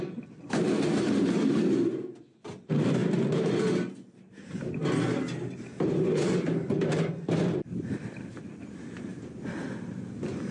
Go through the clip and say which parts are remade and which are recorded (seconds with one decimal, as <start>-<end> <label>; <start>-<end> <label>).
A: 0.0-10.5 recorded